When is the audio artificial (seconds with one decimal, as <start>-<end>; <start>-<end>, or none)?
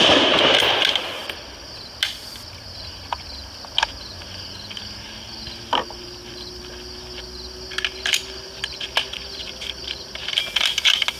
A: none